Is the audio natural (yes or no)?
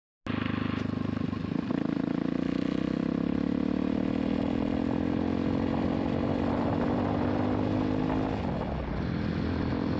yes